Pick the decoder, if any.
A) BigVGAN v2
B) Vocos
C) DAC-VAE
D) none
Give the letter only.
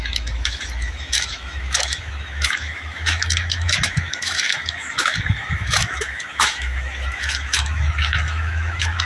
C